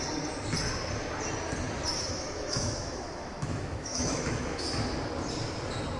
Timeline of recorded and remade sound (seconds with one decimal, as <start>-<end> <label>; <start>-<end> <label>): 0.0-1.9 recorded; 1.9-4.8 remade; 4.8-6.0 recorded